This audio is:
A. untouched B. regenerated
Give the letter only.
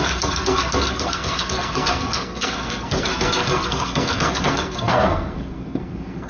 B